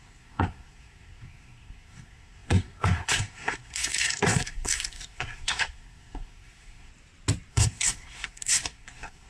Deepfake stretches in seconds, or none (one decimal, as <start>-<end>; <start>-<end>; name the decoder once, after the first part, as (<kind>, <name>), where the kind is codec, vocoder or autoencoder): 0.0-6.9 (codec, SNAC); 7.5-9.3